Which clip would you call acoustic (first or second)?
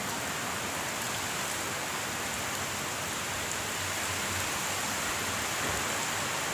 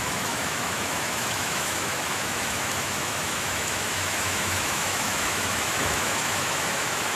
first